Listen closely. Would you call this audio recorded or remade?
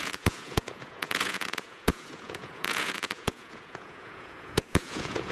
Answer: remade